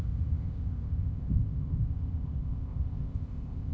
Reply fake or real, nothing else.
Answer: fake